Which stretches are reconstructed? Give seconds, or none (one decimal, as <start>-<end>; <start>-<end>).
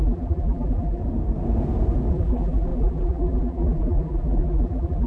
0.0-1.0; 2.1-5.1